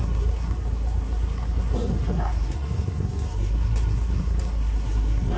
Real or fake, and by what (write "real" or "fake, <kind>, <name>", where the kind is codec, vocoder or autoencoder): fake, codec, SNAC